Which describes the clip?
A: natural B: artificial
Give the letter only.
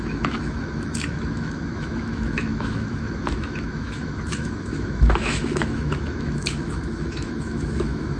B